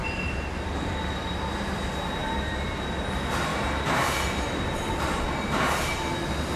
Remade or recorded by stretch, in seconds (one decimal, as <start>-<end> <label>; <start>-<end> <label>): 0.0-1.0 remade; 1.0-2.2 recorded; 2.2-3.1 remade; 3.1-6.6 recorded